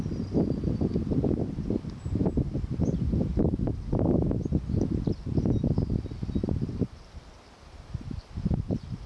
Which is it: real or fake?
real